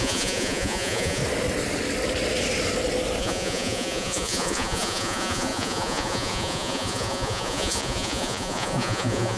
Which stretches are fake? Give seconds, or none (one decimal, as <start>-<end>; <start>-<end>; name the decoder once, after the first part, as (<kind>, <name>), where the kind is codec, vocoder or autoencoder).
0.0-1.2 (vocoder, Vocos); 3.2-9.4